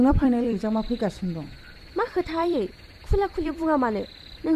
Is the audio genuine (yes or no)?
no